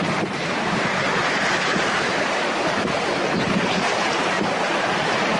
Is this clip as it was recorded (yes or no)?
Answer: no